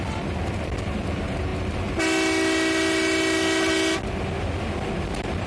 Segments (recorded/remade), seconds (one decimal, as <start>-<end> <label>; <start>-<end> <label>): 0.0-5.5 recorded